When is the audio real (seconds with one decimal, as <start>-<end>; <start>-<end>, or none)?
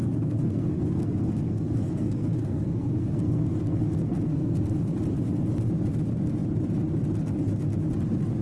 4.6-8.4